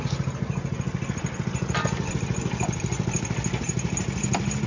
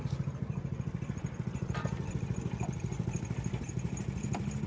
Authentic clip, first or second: first